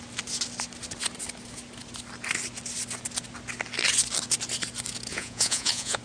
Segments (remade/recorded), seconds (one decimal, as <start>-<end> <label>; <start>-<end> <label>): 0.0-5.1 recorded; 5.1-6.0 remade